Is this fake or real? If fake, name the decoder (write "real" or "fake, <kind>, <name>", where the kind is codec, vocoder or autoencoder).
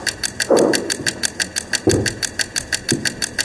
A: real